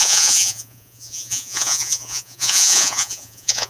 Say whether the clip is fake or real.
fake